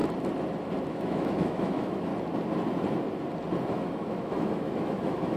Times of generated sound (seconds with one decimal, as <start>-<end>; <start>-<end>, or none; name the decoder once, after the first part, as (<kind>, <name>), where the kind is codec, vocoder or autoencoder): 0.9-2.1 (autoencoder, DAC-VAE); 3.7-5.4